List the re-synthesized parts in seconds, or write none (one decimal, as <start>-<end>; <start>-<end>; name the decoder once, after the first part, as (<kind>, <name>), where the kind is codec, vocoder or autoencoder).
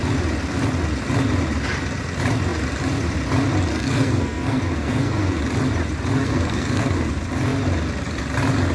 3.7-5.4 (codec, SNAC); 6.2-7.1